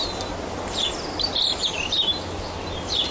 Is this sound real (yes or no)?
yes